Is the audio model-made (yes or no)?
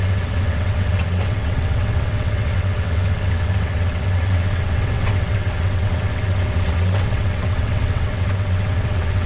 yes